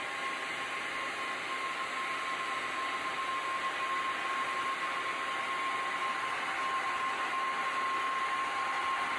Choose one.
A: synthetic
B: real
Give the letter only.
B